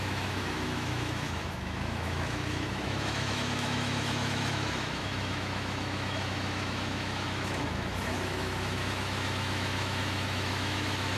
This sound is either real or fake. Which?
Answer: fake